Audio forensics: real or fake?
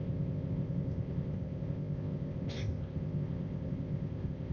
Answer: fake